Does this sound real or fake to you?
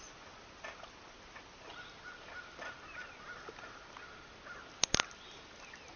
real